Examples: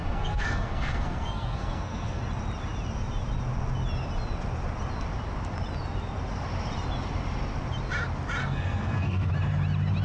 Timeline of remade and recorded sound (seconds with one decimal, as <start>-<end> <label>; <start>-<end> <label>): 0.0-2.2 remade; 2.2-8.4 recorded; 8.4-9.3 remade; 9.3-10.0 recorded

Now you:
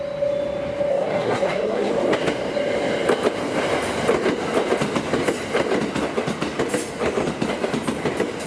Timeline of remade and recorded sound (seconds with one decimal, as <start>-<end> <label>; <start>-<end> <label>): 0.0-0.9 recorded; 0.9-1.9 remade; 1.9-8.5 recorded

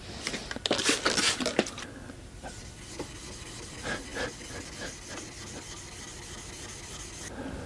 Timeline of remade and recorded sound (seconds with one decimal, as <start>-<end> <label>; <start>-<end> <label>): 0.0-7.7 recorded

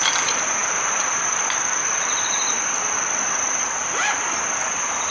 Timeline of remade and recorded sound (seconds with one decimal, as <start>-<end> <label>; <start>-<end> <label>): 0.0-5.1 recorded

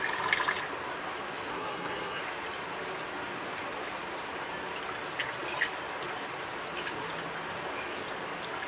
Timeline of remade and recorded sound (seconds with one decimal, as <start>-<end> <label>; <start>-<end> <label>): 0.0-1.5 recorded; 1.5-2.2 remade; 2.2-8.7 recorded

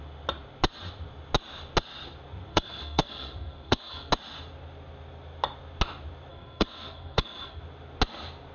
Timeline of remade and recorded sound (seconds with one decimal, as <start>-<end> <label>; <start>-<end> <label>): 0.0-2.5 recorded; 2.5-4.1 remade; 4.1-6.3 recorded; 6.3-7.6 remade; 7.6-8.5 recorded

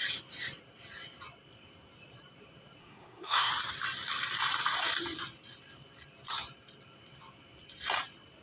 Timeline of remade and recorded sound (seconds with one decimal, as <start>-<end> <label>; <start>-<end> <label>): 0.0-2.8 recorded; 2.8-3.5 remade; 3.5-8.4 recorded